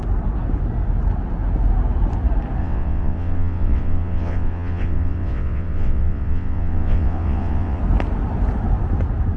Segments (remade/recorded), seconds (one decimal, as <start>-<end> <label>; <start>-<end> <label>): 0.0-2.6 recorded; 2.6-7.8 remade; 7.8-9.4 recorded